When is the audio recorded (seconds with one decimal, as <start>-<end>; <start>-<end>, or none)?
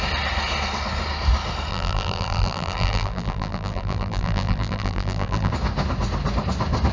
0.0-1.7; 5.5-6.9